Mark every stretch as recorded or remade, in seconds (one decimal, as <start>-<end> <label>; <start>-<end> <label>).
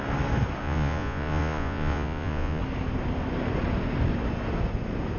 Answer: 0.0-0.6 recorded; 0.6-2.6 remade; 2.6-5.2 recorded